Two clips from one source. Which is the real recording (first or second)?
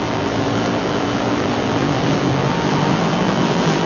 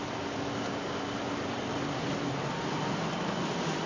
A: second